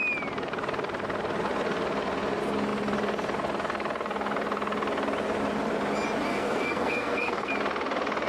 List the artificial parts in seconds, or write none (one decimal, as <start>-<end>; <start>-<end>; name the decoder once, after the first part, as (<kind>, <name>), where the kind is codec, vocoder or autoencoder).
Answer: 6.3-7.5 (codec, SNAC)